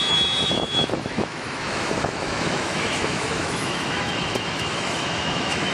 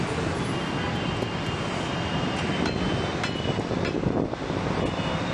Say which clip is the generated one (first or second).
first